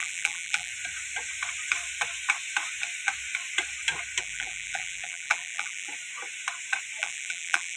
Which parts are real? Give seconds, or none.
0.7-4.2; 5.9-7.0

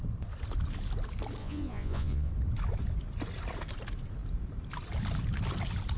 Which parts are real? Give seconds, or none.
0.0-1.4; 2.3-6.0

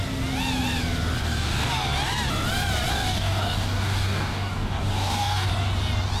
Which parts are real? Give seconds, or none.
0.0-1.2; 1.7-2.9; 5.5-6.2